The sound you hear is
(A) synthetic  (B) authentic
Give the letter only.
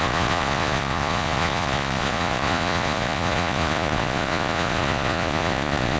A